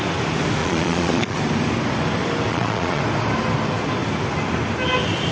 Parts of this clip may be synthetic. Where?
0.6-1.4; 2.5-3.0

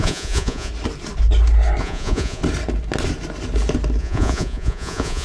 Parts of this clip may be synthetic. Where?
0.0-0.7; 1.8-2.4; 4.0-5.2

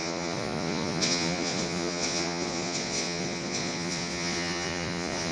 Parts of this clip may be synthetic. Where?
0.0-5.3